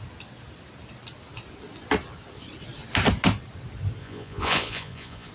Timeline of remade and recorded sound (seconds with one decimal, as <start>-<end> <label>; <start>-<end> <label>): 0.0-4.0 recorded; 4.0-5.3 remade